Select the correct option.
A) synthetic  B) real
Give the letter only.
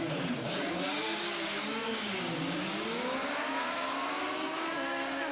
A